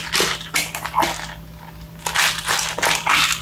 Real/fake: real